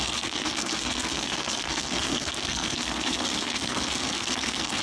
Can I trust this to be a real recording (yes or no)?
no